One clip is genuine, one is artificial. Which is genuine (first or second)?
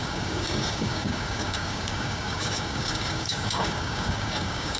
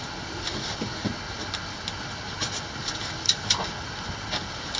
second